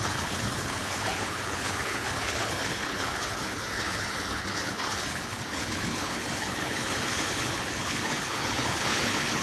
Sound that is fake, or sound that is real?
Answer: fake